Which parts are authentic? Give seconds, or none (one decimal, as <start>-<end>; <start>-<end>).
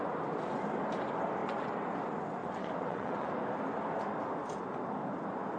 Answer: 0.0-2.4; 3.3-5.6